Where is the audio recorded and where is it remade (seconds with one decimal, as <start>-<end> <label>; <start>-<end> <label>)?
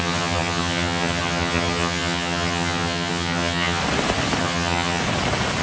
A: 0.0-3.8 remade; 3.8-4.4 recorded; 4.4-5.0 remade; 5.0-5.6 recorded